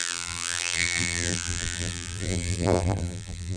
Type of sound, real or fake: fake